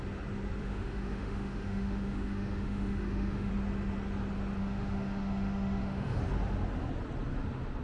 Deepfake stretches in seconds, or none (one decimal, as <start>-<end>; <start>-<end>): 0.6-3.5; 4.6-6.2